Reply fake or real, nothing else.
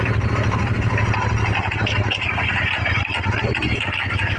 real